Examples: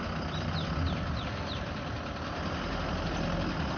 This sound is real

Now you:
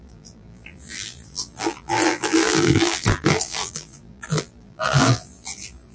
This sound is fake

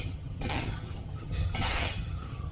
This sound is fake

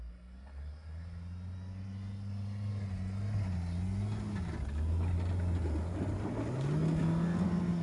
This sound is real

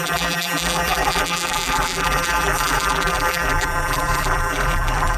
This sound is fake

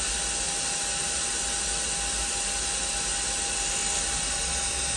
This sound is real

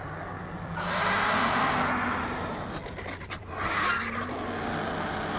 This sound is real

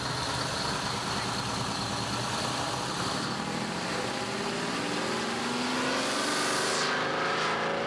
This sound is real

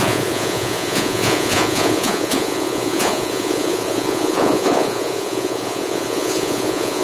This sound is fake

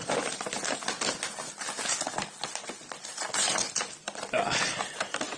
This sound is real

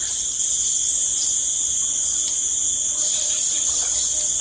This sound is real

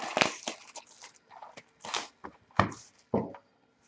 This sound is real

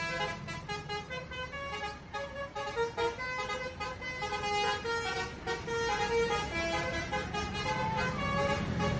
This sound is real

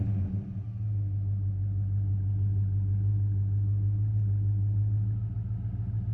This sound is real